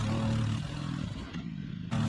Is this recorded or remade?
recorded